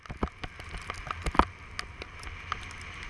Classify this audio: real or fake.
real